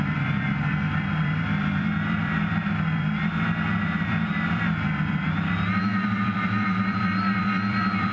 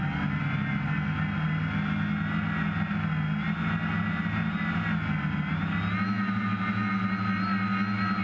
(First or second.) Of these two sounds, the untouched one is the second